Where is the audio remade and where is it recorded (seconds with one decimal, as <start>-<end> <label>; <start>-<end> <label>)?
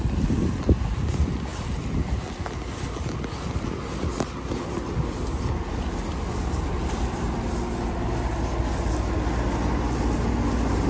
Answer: 0.0-10.9 recorded